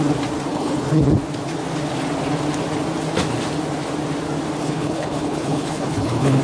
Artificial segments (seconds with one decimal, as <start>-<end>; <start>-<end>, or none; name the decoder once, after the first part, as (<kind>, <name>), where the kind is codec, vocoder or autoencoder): 0.5-1.0 (codec, HILCodec); 4.6-6.4